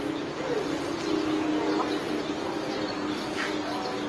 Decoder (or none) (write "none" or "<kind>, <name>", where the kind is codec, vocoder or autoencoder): none